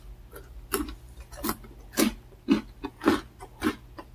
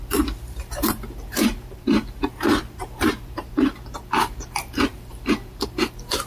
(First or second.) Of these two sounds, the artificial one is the second